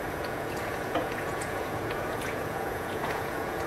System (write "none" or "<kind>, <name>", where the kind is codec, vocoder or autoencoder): vocoder, Vocos